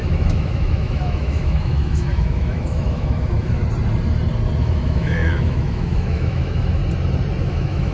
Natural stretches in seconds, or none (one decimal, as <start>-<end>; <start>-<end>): 3.6-4.6; 6.8-7.4